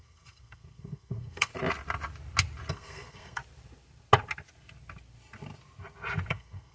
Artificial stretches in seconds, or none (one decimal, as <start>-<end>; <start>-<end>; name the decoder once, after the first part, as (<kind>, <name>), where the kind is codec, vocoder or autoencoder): 0.0-1.5 (codec, SNAC); 2.7-3.4; 6.3-6.7